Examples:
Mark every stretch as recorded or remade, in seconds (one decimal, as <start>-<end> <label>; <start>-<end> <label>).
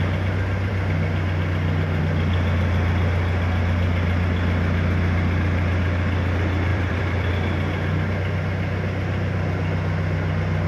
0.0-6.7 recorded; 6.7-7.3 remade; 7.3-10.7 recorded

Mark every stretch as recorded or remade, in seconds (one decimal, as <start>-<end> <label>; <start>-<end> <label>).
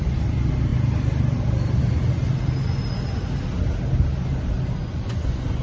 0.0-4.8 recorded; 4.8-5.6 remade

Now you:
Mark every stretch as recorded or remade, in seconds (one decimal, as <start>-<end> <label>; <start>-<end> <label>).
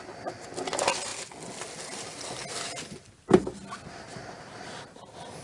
0.0-5.4 recorded